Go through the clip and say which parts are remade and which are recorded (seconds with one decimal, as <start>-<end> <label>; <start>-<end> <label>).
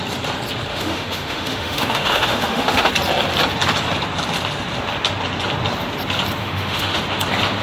0.0-0.7 recorded; 0.7-2.9 remade; 2.9-6.4 recorded; 6.4-7.0 remade; 7.0-7.6 recorded